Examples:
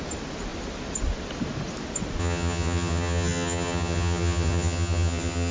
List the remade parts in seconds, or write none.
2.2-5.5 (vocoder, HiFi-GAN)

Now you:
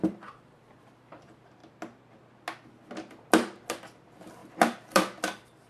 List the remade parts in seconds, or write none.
0.0-1.6 (vocoder, BigVGAN v2); 3.2-5.7

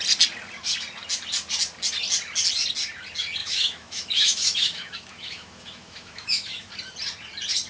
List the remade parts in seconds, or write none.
3.4-6.7 (autoencoder, DAC-VAE)

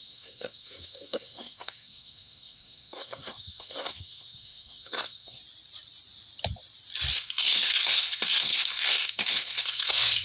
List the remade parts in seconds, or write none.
0.0-5.4 (codec, SNAC); 7.1-10.2

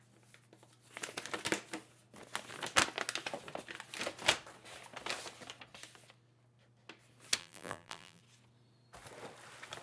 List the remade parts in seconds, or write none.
7.4-8.2 (vocoder, BigVGAN v2)

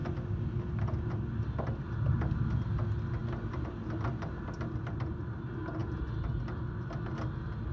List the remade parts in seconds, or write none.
none

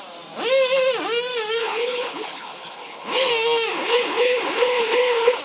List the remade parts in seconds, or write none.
1.6-3.3 (codec, HILCodec); 3.7-5.4